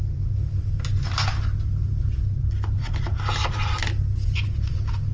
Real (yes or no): yes